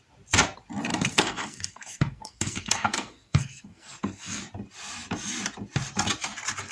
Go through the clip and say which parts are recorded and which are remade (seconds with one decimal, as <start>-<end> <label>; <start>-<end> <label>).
0.0-0.9 recorded; 0.9-4.4 remade; 4.4-6.7 recorded